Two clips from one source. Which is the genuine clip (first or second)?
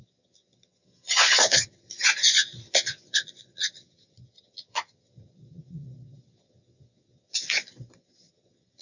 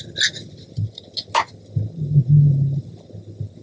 second